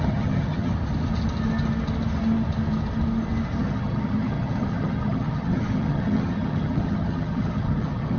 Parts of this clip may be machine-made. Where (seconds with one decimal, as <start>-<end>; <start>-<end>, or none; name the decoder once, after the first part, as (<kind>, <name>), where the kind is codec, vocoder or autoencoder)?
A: 0.0-0.7 (vocoder, HiFi-GAN); 3.6-8.2